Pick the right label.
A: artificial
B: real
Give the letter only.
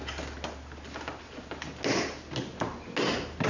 B